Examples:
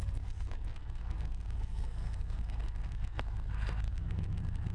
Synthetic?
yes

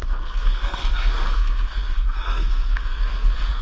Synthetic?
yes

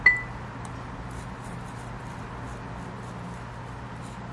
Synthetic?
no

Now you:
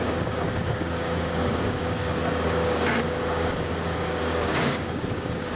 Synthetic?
yes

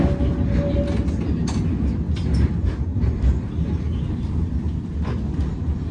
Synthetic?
no